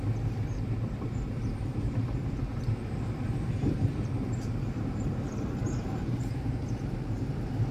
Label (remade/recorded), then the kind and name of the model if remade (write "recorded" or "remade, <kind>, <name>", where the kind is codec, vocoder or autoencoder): remade, vocoder, BigVGAN v2